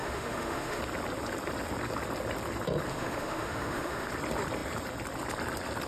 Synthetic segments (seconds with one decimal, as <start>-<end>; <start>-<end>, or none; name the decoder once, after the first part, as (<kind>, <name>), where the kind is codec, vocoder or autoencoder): 0.0-0.8 (autoencoder, DAC-VAE); 2.9-4.1